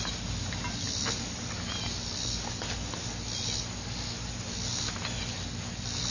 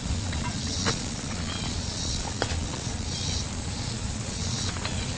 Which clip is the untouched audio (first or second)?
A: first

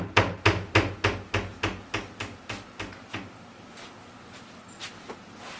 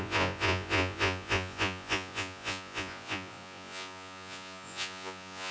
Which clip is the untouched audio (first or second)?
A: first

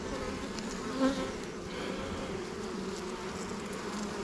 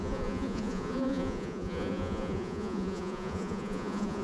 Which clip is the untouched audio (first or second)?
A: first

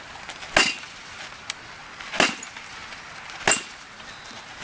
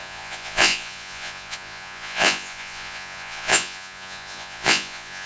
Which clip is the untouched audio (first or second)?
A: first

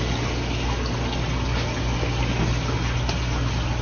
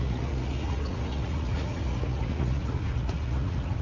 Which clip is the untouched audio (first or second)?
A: first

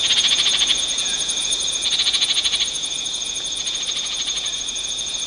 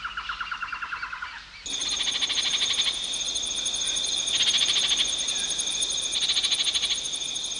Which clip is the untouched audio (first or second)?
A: second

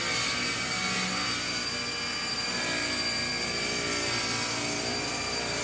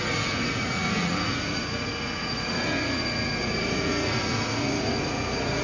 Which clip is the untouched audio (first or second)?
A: first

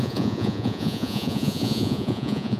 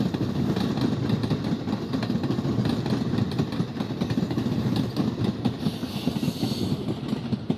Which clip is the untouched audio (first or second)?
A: second